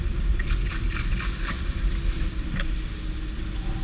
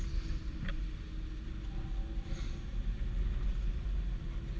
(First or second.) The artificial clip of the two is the first